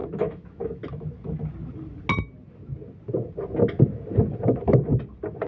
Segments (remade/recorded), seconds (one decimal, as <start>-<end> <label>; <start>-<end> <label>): 0.0-0.8 remade; 0.8-5.5 recorded